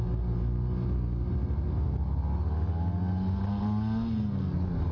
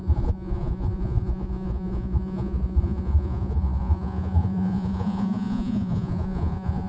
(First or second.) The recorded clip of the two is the first